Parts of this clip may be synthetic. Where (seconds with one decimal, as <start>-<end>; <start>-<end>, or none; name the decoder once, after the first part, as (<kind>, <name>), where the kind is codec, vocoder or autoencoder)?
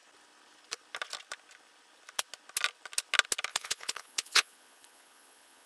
3.5-5.7 (vocoder, Vocos)